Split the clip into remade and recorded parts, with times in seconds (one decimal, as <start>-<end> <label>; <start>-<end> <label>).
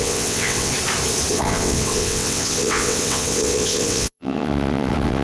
0.0-0.7 remade; 0.7-1.3 recorded; 1.3-5.2 remade